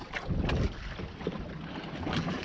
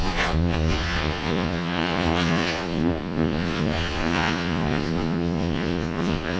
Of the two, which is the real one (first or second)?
first